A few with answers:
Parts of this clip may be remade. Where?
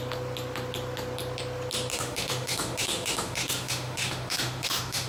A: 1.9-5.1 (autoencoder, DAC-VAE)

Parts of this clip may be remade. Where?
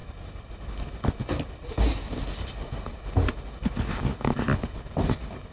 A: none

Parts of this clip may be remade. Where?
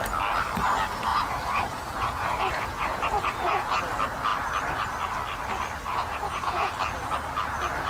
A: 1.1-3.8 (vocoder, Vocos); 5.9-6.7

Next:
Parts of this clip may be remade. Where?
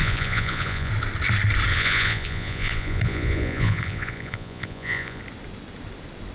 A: 0.0-0.9 (vocoder, Vocos); 1.7-5.2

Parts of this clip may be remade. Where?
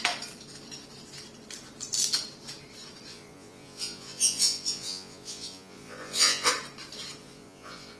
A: 3.1-6.5 (vocoder, Vocos); 7.2-8.0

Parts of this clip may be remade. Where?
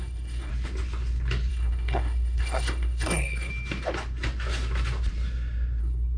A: 0.0-0.5 (codec, SNAC); 1.5-3.5; 5.8-6.2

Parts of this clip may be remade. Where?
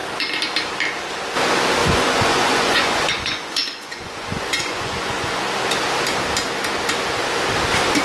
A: 1.8-5.4 (vocoder, Vocos)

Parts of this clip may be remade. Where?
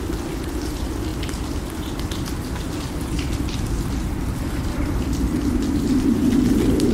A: 0.0-1.1 (vocoder, BigVGAN v2); 4.4-6.9